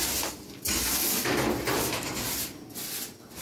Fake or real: real